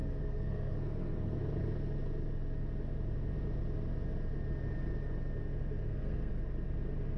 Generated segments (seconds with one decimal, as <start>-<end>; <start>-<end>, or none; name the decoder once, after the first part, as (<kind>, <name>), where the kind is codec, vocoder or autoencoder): 0.0-1.4 (codec, SNAC); 5.7-6.3